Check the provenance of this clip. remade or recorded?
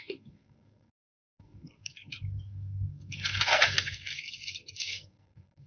remade